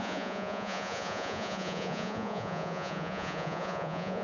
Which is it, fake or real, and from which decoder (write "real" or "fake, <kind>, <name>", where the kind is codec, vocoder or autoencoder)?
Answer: fake, vocoder, Vocos